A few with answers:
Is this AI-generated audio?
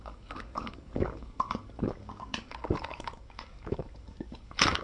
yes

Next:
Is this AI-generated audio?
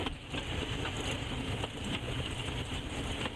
no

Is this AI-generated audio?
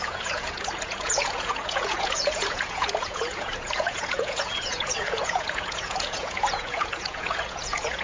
yes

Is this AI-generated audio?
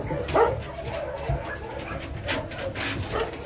no